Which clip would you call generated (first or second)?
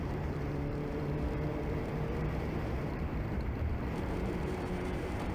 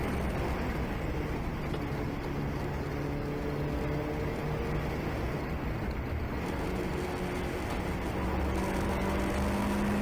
first